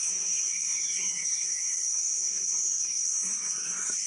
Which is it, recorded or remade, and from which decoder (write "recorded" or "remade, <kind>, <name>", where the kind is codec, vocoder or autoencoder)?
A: remade, codec, SNAC